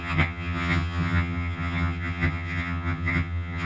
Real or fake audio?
fake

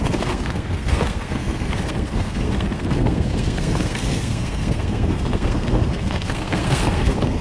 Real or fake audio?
fake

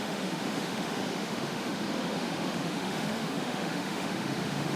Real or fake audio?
fake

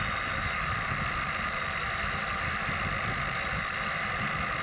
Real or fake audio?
real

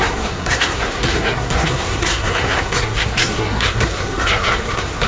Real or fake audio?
fake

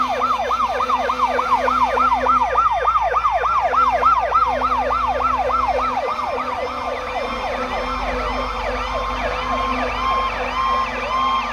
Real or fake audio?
real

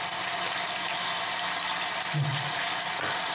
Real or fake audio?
real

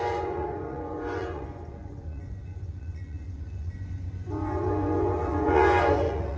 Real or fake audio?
fake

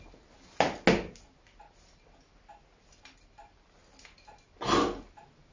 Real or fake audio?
real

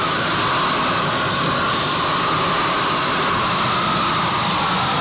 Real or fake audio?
real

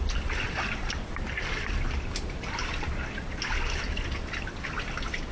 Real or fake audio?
real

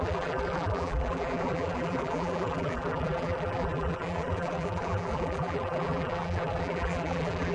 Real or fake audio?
fake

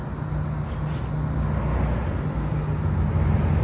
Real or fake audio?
real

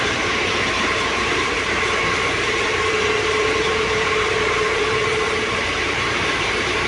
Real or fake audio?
fake